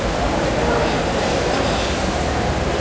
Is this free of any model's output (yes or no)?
yes